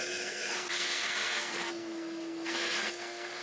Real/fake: fake